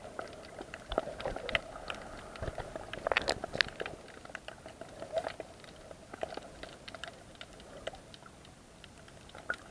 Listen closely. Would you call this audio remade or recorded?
recorded